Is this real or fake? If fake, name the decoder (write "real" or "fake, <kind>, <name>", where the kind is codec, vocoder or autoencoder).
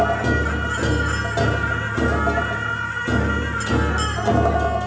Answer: real